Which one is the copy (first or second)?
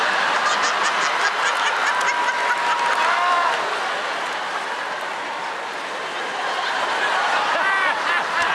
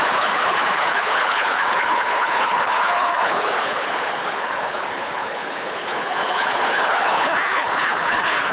second